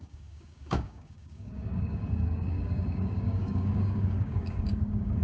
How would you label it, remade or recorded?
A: remade